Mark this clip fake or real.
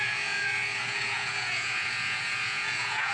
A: fake